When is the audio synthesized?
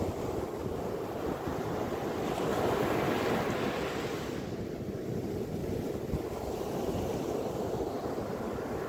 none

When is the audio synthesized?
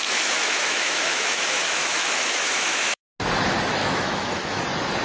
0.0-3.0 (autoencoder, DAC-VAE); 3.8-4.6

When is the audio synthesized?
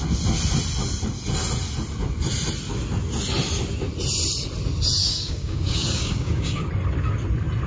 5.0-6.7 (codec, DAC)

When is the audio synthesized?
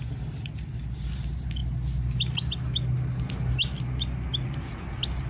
none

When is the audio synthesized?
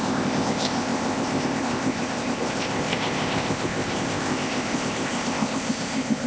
0.0-6.3 (codec, ZipCodec)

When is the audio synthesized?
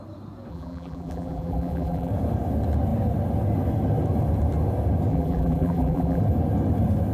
0.5-2.1 (vocoder, BigVGAN v2); 5.1-6.2